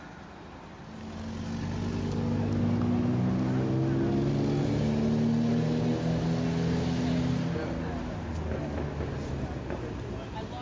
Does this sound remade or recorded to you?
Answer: recorded